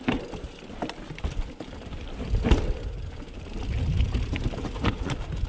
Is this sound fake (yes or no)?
no